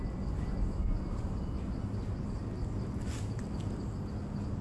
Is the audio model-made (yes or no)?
no